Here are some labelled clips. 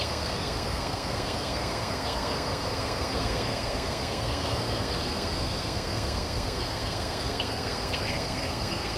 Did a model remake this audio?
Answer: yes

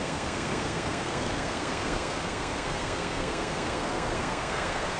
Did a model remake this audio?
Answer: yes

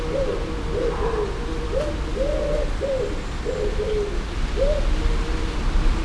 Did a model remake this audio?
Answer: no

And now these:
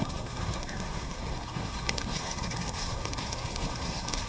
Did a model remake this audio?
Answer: yes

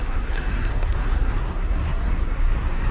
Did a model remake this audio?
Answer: yes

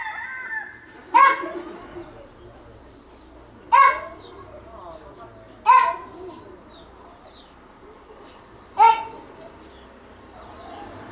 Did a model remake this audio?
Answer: no